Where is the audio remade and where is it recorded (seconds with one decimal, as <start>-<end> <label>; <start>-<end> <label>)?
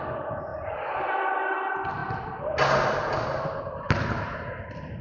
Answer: 0.0-5.0 recorded